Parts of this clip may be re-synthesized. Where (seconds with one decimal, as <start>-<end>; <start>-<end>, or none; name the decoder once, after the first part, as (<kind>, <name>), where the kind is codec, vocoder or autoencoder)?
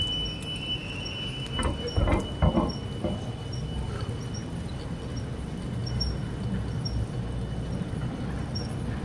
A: none